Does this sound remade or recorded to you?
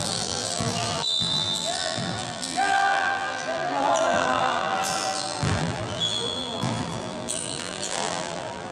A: remade